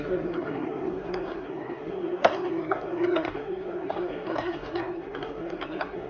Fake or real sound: fake